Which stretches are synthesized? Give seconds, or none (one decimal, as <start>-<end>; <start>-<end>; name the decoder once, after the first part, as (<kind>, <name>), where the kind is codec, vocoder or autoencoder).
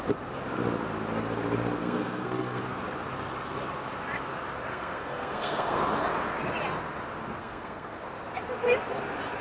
1.8-2.6 (codec, SNAC); 4.7-5.8; 7.4-8.1